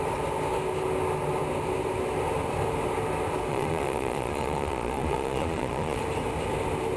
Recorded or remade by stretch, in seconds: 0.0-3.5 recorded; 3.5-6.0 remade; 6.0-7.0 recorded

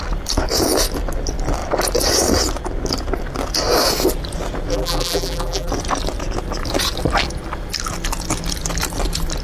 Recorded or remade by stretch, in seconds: 0.0-4.7 recorded; 4.7-5.7 remade; 5.7-9.4 recorded

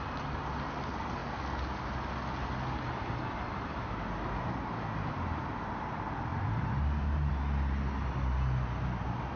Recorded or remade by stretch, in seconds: 0.0-3.0 recorded; 3.0-5.5 remade; 5.5-6.3 recorded; 6.3-7.3 remade; 7.3-9.4 recorded

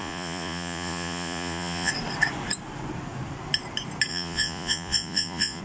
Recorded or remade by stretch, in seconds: 0.0-1.9 remade; 1.9-4.1 recorded; 4.1-5.6 remade

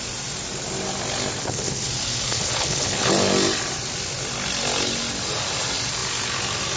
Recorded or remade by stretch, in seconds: 0.0-1.4 recorded; 1.4-1.9 remade; 1.9-2.3 recorded; 2.3-3.1 remade; 3.1-6.8 recorded

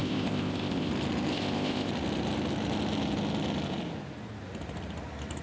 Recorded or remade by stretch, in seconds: 0.0-0.9 remade; 0.9-1.3 recorded; 1.3-1.9 remade; 1.9-5.4 recorded

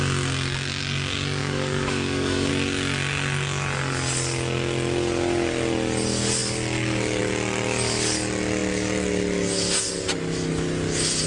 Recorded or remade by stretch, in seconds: 0.0-1.4 recorded; 1.4-2.5 remade; 2.5-11.3 recorded

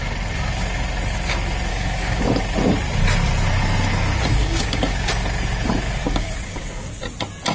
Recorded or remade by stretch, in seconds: 0.0-1.7 recorded; 1.7-2.2 remade; 2.2-4.3 recorded; 4.3-5.1 remade; 5.1-6.0 recorded; 6.0-7.0 remade; 7.0-7.5 recorded